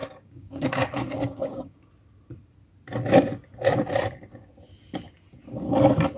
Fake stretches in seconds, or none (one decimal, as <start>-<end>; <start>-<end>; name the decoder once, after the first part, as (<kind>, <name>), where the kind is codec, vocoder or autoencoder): 0.0-1.9 (codec, DAC)

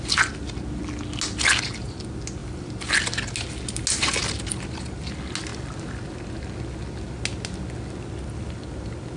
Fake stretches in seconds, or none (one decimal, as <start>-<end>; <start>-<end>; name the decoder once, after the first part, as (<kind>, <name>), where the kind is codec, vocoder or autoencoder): none